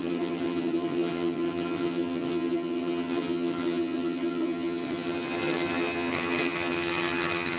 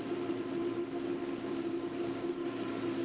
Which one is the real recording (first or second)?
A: second